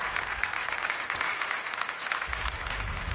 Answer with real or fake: real